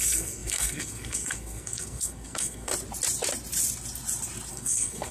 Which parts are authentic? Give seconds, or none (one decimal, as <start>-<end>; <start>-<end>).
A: 2.7-4.5